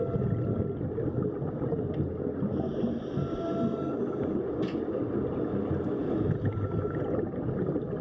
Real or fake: real